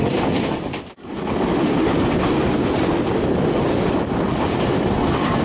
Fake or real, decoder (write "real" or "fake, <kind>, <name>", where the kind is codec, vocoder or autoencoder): real